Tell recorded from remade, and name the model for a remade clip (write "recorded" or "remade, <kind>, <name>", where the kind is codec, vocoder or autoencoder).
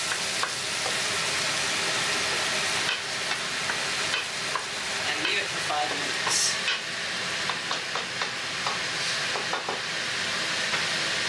recorded